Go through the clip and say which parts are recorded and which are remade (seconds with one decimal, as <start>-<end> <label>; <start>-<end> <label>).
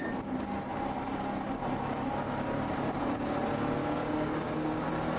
0.0-3.8 recorded; 3.8-4.8 remade; 4.8-5.2 recorded